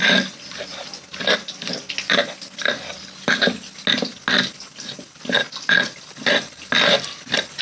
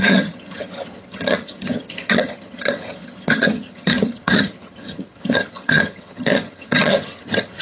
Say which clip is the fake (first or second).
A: second